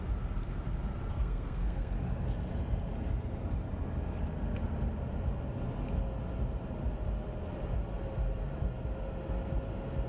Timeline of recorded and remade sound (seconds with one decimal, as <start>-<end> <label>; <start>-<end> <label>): 0.0-1.1 recorded; 1.1-1.9 remade; 1.9-10.1 recorded